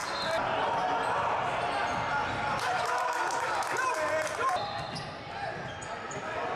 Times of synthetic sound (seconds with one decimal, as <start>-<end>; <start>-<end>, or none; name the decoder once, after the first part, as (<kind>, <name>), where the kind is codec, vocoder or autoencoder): none

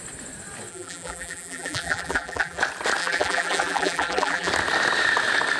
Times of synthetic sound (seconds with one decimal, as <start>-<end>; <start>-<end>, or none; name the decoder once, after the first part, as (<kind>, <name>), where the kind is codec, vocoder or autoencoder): 0.7-2.6 (vocoder, BigVGAN v2); 3.0-4.5